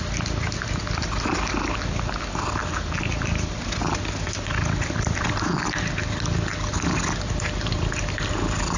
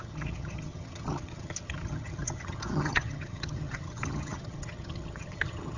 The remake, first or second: second